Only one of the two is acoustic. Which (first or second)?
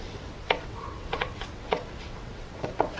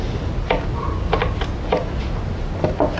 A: second